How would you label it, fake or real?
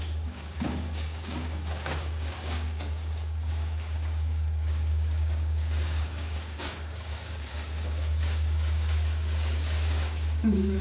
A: fake